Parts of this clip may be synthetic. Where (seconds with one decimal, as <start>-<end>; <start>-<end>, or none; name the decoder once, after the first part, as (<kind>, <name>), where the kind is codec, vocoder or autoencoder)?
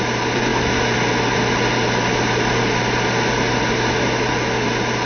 none